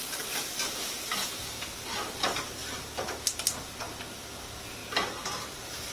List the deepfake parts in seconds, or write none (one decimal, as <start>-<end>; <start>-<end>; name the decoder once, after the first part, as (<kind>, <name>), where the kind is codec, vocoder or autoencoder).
none